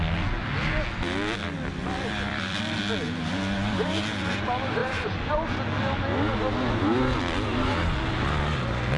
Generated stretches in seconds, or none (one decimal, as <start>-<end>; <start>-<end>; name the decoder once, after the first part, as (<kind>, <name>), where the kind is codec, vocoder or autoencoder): 1.8-2.6 (vocoder, BigVGAN v2); 4.8-5.3

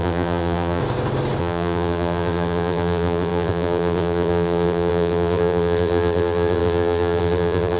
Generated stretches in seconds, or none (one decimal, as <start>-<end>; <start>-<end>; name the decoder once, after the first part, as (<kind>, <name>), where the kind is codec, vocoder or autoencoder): 0.0-0.8 (vocoder, BigVGAN v2); 1.4-7.8

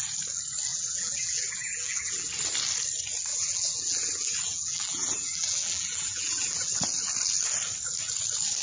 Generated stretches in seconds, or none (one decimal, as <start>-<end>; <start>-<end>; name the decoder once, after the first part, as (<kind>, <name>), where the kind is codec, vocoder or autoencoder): 0.7-2.3 (vocoder, BigVGAN v2); 3.3-6.7